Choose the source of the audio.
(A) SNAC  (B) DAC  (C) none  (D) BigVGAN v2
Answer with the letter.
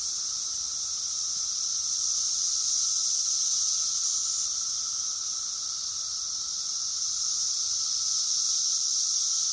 D